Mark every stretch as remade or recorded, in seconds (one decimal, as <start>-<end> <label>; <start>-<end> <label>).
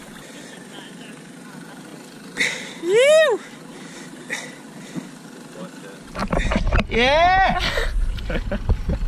0.0-6.2 recorded; 6.2-6.7 remade; 6.7-9.1 recorded